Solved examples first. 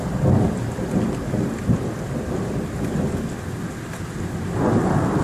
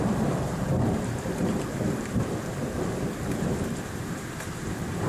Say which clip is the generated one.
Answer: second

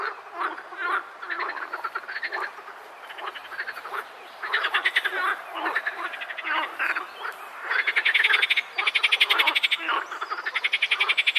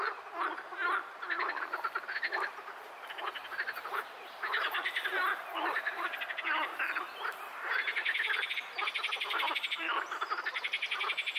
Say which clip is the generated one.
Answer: second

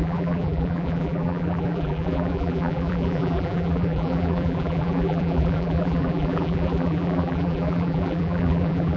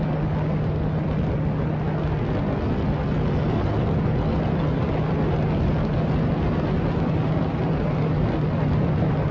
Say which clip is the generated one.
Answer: first